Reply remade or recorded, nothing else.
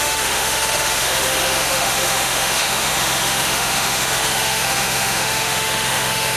remade